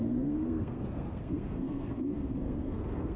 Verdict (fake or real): fake